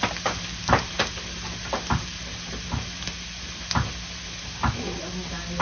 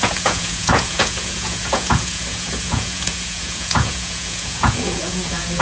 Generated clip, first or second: second